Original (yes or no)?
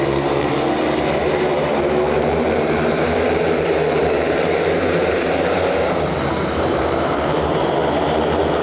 no